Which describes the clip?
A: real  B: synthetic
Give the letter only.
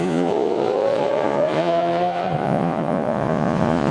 B